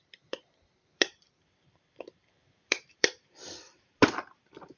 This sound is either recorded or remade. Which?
remade